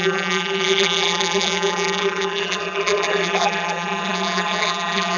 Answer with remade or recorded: remade